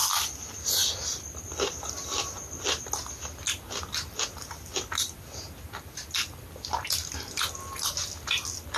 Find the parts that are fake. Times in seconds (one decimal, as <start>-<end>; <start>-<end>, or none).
none